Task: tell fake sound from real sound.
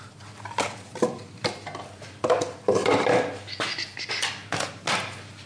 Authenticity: real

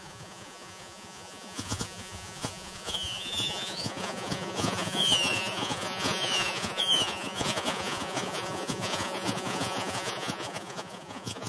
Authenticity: fake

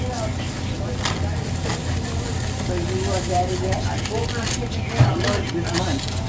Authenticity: real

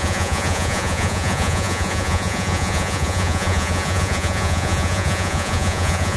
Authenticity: fake